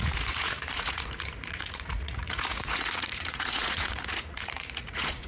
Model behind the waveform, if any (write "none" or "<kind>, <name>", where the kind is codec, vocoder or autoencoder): vocoder, Vocos